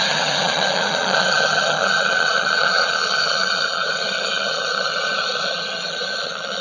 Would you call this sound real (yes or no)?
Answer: no